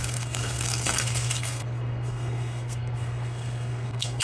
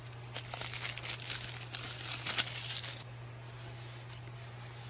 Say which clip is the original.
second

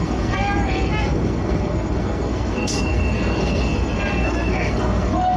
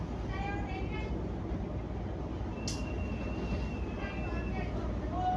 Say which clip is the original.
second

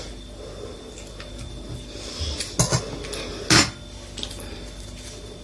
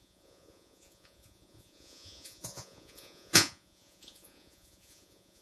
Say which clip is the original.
first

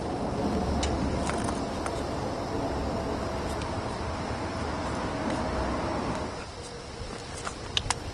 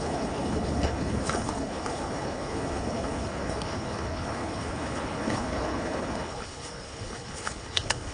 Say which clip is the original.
first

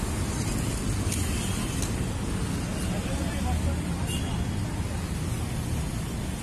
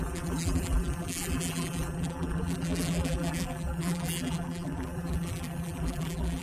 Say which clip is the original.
first